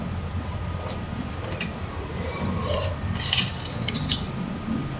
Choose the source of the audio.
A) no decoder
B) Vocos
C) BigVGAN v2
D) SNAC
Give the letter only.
A